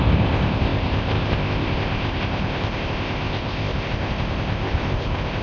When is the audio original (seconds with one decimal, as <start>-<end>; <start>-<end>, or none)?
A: none